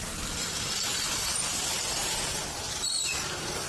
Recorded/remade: recorded